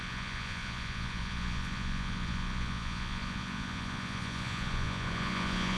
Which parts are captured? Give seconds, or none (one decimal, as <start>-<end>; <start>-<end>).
none